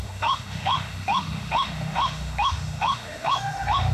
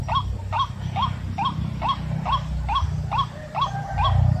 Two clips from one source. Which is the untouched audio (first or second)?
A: second